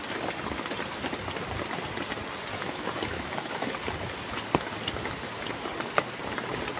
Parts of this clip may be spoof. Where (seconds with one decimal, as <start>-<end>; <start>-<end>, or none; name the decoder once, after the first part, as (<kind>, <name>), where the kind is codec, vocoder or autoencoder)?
2.5-3.7 (autoencoder, DAC-VAE)

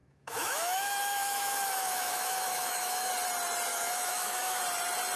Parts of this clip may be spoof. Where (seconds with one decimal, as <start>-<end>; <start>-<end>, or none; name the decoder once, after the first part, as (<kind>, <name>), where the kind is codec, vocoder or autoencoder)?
0.0-3.1 (autoencoder, DAC-VAE); 3.7-4.6

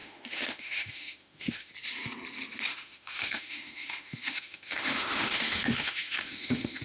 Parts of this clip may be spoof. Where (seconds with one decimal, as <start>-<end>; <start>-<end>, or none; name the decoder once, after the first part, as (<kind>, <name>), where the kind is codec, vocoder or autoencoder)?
0.0-1.7 (autoencoder, DAC-VAE); 2.7-6.8

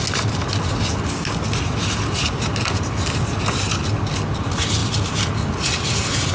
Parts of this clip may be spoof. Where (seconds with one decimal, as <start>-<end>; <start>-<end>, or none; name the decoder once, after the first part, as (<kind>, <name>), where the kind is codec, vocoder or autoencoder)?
none

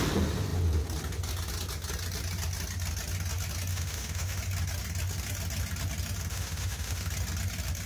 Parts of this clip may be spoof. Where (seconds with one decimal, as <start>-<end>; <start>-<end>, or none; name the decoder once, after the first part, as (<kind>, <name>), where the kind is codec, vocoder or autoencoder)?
3.7-4.4 (autoencoder, DAC-VAE); 6.3-7.1

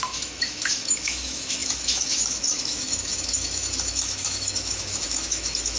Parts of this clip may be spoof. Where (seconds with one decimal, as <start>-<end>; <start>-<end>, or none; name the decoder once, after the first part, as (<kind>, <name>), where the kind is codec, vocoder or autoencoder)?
0.0-5.8 (autoencoder, DAC-VAE)

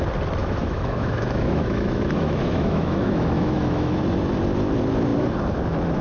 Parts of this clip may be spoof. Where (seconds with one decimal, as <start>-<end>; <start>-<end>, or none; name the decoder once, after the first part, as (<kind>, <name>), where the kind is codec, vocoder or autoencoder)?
0.4-4.0 (autoencoder, DAC-VAE)

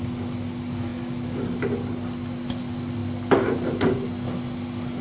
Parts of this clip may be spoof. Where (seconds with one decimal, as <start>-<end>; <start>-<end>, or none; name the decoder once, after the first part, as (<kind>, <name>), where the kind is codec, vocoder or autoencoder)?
none